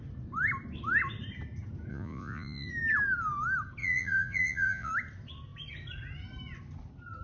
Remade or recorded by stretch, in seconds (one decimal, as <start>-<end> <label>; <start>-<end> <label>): 0.0-1.9 recorded; 1.9-2.7 remade; 2.7-3.8 recorded; 3.8-4.9 remade; 4.9-7.2 recorded